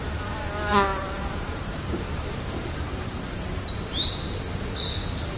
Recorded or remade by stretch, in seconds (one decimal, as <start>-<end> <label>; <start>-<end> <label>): 0.0-0.9 recorded; 0.9-4.1 remade; 4.1-5.4 recorded